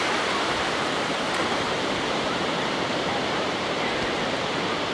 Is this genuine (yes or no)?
no